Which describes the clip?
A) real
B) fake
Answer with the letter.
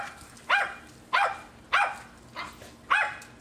A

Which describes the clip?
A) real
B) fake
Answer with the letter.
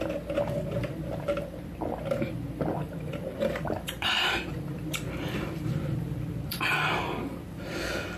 B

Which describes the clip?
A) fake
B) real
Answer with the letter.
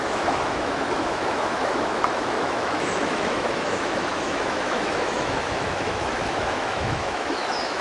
A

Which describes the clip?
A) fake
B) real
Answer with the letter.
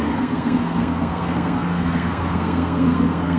A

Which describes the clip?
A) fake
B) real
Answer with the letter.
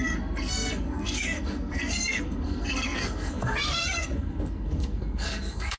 A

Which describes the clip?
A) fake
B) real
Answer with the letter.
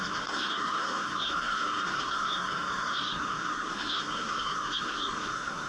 A